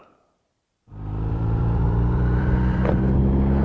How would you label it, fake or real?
fake